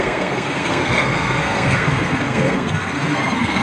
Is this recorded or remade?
remade